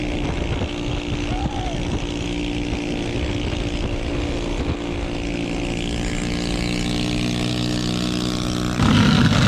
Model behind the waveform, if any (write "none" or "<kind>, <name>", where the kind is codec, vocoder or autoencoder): none